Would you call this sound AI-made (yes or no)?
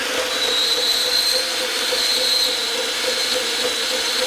no